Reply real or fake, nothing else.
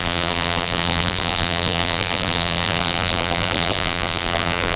fake